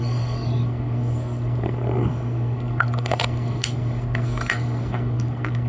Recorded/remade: remade